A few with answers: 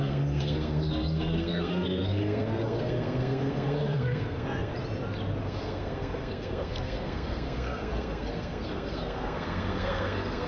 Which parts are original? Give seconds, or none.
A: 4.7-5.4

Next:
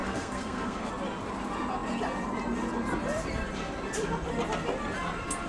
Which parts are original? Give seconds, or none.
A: 0.9-5.5

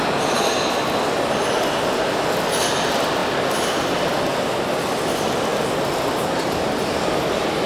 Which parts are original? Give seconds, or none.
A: 0.0-7.7

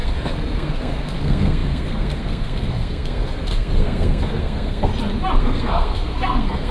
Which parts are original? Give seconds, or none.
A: 4.9-5.4

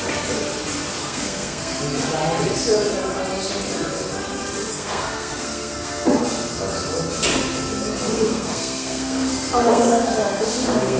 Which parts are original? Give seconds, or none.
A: 0.0-1.0; 1.8-4.7; 6.2-8.1

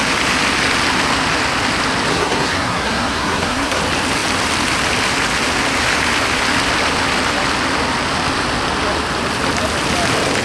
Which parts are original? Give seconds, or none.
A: 0.0-2.1; 3.8-10.4

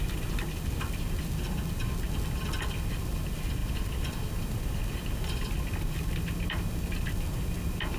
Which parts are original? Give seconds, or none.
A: 0.0-8.0

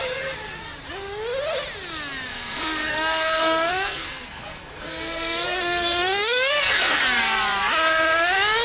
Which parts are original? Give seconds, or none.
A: 0.0-2.3; 7.0-8.6